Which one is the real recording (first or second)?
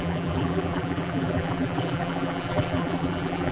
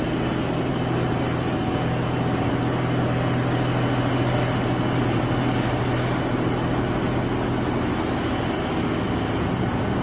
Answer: second